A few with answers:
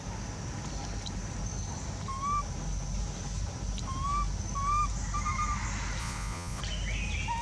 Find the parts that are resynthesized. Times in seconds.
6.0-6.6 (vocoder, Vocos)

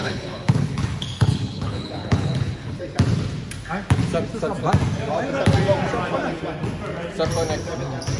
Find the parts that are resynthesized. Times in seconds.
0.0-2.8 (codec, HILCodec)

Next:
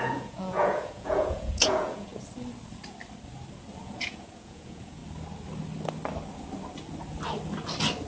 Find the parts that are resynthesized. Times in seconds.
0.0-2.1 (vocoder, Vocos); 3.8-5.0

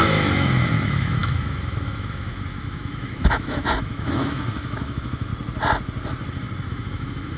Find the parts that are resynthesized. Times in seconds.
0.0-5.3 (autoencoder, DAC-VAE); 6.7-7.4